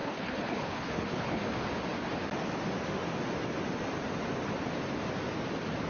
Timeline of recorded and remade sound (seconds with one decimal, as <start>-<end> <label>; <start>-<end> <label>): 0.0-1.4 remade; 1.4-5.9 recorded